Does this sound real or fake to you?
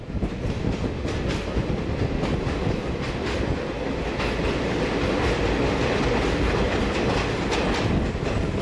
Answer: real